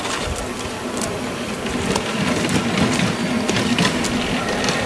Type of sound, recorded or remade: recorded